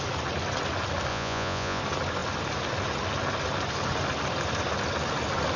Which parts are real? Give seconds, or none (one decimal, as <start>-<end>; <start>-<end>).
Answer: 0.0-1.1; 1.8-5.6